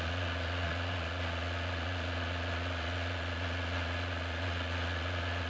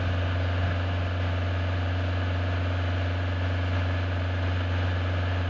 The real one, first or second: second